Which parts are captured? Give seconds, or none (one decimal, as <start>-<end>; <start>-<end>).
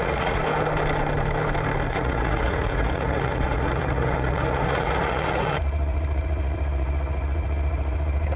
0.4-1.9